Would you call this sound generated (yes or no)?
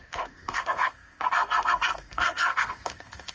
yes